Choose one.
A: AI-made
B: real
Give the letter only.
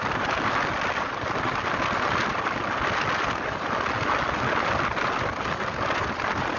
B